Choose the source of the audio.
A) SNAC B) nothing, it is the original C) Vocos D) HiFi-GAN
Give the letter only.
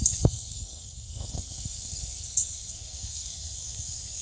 A